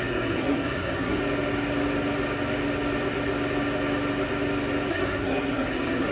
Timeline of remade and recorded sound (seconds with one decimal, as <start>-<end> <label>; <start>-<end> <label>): 0.0-1.2 remade; 1.2-4.9 recorded; 4.9-6.1 remade